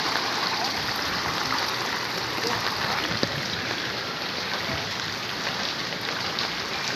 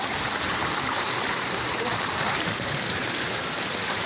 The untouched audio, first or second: first